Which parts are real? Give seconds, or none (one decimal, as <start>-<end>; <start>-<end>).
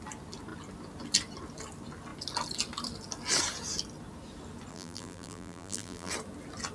0.0-4.7; 6.1-6.7